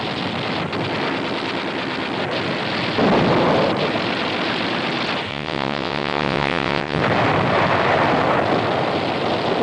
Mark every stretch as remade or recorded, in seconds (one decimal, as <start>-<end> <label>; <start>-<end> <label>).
0.0-5.3 recorded; 5.3-7.0 remade; 7.0-9.6 recorded